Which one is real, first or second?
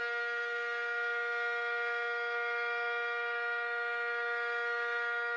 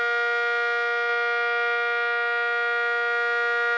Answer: second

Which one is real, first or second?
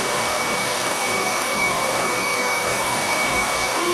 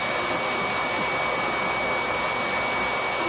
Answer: second